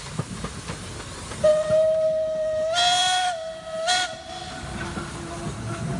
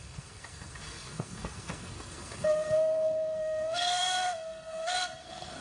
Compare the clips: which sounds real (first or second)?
first